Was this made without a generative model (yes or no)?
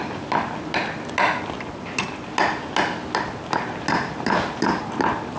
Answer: yes